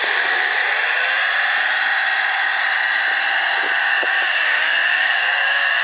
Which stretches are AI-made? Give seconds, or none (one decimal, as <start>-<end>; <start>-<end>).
0.0-0.6; 3.8-5.8